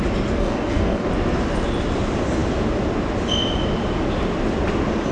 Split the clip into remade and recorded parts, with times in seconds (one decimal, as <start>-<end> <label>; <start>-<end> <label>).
0.0-0.4 recorded; 0.4-1.1 remade; 1.1-5.1 recorded